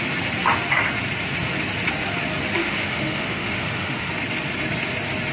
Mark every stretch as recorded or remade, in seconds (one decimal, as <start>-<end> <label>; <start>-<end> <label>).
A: 0.0-2.6 recorded; 2.6-4.1 remade; 4.1-5.3 recorded